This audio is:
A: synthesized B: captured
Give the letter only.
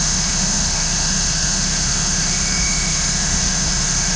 A